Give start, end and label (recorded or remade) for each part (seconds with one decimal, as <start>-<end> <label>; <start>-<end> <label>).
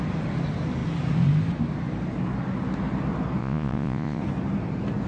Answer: 0.0-3.4 recorded; 3.4-4.2 remade; 4.2-5.1 recorded